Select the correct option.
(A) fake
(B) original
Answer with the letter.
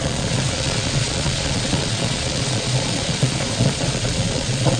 A